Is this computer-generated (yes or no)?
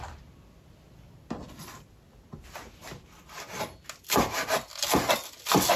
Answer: no